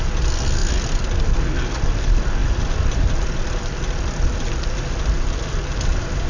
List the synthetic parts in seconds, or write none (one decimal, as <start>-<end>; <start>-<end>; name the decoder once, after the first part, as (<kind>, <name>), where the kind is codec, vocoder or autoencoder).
none

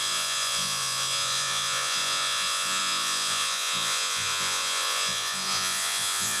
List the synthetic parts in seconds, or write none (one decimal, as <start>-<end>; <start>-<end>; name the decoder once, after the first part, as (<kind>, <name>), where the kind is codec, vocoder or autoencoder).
0.0-6.4 (vocoder, Vocos)

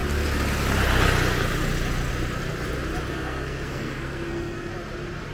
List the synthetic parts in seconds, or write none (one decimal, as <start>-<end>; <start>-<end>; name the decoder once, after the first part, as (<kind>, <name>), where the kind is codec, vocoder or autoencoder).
3.1-4.7 (codec, SNAC)

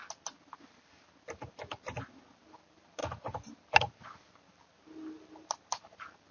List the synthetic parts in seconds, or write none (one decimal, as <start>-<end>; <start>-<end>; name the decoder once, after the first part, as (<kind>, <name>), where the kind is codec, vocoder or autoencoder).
none

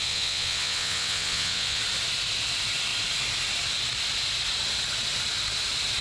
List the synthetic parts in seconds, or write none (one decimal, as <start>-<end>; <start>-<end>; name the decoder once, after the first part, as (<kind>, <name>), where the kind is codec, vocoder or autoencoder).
0.0-1.8 (vocoder, WaveNeXt)

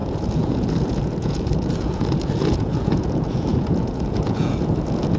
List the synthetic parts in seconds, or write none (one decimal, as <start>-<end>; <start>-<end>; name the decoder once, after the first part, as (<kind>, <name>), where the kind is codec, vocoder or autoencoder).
0.0-5.2 (vocoder, Vocos)